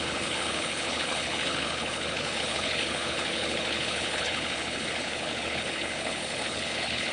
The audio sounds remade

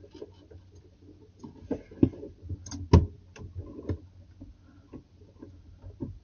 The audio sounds recorded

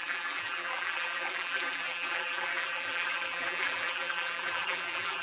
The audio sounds remade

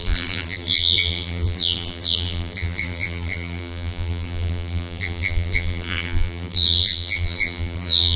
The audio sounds remade